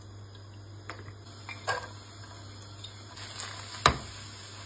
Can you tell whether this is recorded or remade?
recorded